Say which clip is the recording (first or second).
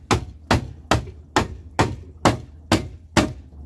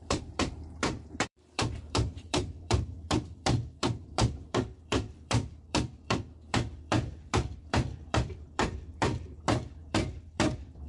first